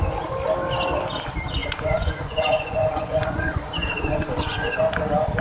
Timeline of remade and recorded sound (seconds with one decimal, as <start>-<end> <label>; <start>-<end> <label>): 0.0-1.6 recorded; 1.6-4.8 remade; 4.8-5.4 recorded